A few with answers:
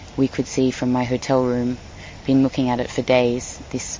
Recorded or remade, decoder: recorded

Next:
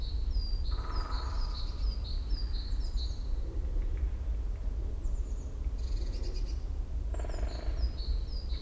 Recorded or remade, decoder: recorded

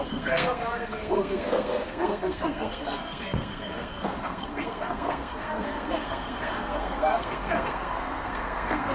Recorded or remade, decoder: remade, codec, SNAC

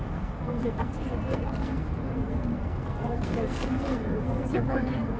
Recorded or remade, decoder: remade, codec, SNAC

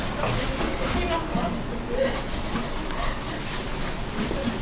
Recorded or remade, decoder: recorded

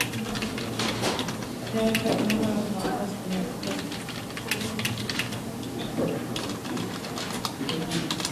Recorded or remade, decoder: recorded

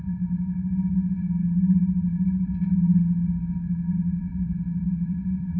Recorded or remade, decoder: recorded